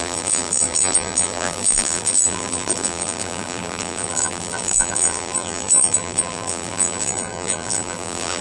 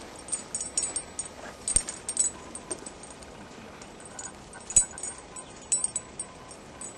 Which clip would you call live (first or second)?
second